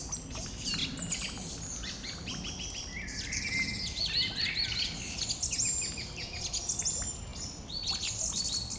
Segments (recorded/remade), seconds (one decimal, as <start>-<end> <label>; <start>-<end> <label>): 0.0-8.8 recorded